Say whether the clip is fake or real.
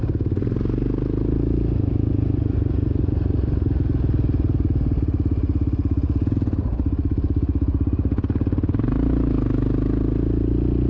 real